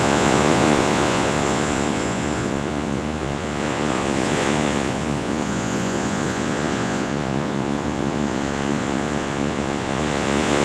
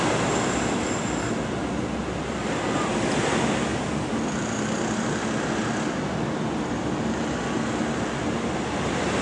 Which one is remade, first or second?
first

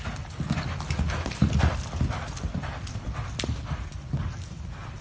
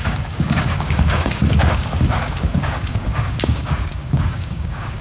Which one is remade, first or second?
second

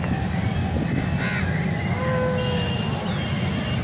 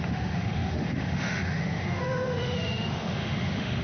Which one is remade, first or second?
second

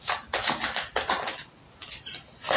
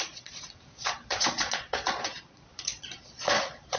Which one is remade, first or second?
second